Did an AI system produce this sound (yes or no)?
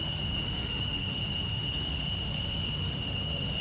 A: yes